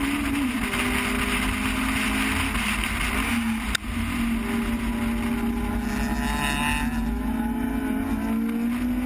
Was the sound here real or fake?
real